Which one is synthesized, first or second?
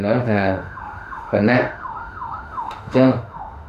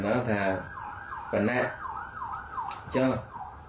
first